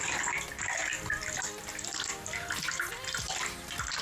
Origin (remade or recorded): recorded